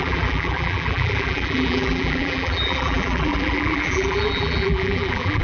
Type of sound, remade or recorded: remade